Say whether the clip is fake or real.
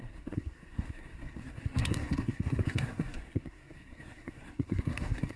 fake